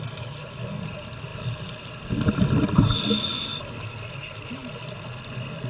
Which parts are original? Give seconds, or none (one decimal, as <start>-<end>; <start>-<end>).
0.0-5.7